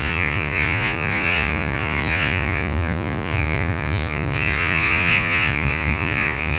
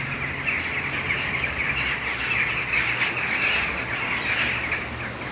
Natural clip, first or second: second